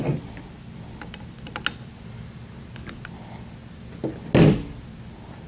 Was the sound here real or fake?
real